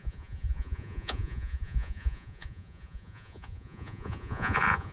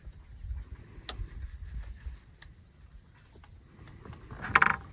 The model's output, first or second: first